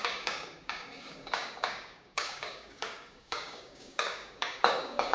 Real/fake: fake